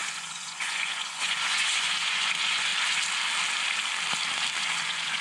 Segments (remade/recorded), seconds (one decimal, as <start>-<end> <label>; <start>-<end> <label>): 0.0-2.7 remade; 2.7-4.6 recorded; 4.6-5.2 remade

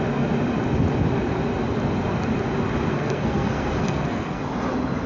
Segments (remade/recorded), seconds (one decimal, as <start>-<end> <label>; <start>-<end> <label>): 0.0-2.9 recorded; 2.9-4.4 remade; 4.4-5.1 recorded